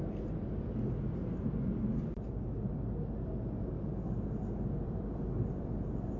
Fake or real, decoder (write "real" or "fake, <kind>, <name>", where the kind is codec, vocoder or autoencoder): real